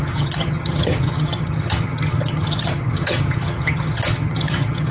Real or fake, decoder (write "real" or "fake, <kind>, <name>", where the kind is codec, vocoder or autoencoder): fake, vocoder, HiFi-GAN